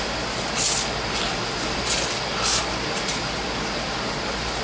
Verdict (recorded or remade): recorded